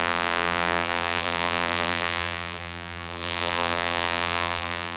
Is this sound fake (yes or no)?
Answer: yes